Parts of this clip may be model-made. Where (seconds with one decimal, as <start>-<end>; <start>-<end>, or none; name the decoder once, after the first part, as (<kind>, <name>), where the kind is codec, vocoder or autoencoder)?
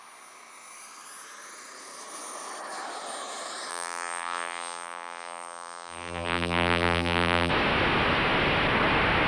3.7-7.5 (vocoder, BigVGAN v2)